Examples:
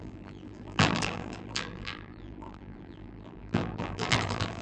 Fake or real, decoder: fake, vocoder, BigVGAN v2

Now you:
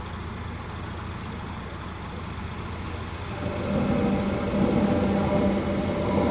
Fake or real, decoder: real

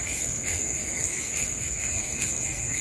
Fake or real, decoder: fake, codec, SNAC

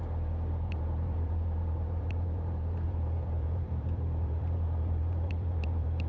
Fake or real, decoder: fake, vocoder, BigVGAN v2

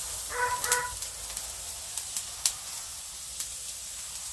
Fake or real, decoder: real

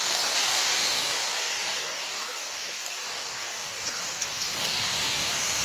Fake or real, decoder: fake, codec, DAC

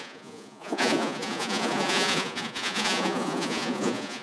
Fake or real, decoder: fake, vocoder, Vocos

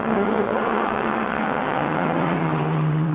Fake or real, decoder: fake, vocoder, WaveNeXt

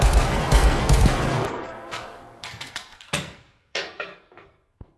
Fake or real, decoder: fake, codec, SNAC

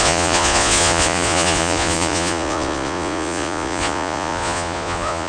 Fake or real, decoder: fake, vocoder, Vocos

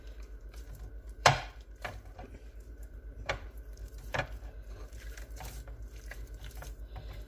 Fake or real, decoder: fake, vocoder, BigVGAN v2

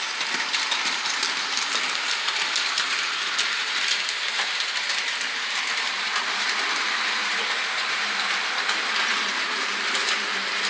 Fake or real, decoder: fake, vocoder, BigVGAN v2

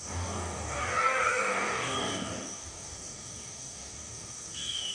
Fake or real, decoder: fake, codec, DAC